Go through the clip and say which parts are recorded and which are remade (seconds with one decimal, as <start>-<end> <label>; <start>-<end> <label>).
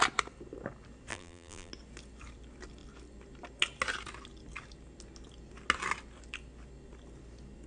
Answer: 0.0-1.1 recorded; 1.1-1.7 remade; 1.7-7.7 recorded